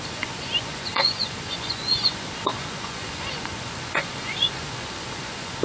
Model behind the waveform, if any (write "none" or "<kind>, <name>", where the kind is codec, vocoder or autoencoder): vocoder, Vocos